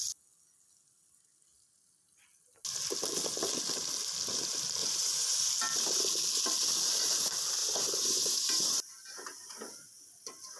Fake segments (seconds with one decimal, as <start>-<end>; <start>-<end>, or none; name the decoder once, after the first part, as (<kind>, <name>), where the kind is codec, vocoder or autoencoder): 4.8-5.5 (vocoder, Vocos); 7.6-8.7